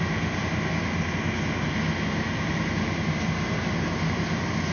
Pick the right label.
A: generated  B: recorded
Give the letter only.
B